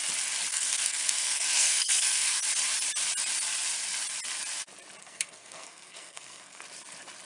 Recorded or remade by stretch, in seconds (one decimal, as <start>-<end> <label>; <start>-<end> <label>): 0.0-0.5 recorded; 0.5-2.4 remade; 2.4-5.0 recorded; 5.0-6.6 remade; 6.6-7.3 recorded